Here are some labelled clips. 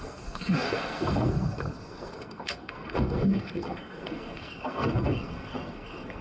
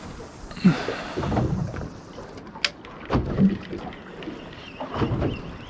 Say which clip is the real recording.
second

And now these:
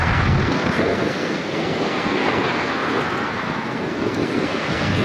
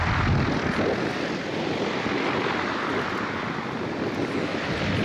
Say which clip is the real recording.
second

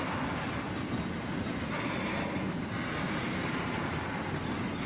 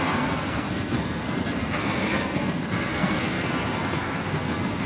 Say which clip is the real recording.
first